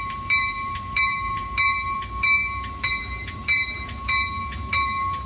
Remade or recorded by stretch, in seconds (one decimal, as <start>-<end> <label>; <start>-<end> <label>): 0.0-5.3 remade